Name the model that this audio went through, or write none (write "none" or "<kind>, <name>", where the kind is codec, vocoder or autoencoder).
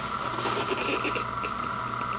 none